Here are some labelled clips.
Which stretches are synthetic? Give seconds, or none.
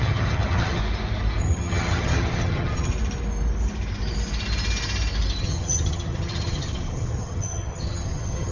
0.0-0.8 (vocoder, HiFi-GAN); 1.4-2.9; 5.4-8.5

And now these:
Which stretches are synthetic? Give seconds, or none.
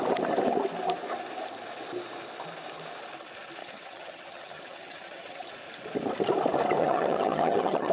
3.6-5.5 (vocoder, HiFi-GAN); 6.8-7.9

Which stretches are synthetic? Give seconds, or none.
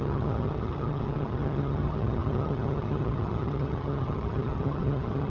0.0-5.3 (vocoder, HiFi-GAN)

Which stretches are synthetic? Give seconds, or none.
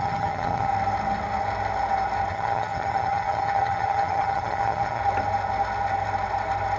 0.0-0.7 (vocoder, HiFi-GAN); 2.3-5.0